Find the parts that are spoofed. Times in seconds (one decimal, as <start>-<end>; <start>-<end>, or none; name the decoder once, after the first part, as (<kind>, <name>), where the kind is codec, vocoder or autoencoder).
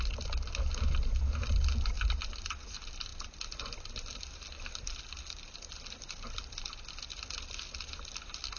none